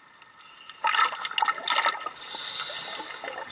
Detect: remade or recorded recorded